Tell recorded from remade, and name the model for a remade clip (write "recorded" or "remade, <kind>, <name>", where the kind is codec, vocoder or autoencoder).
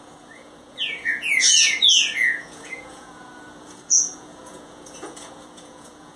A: remade, vocoder, Vocos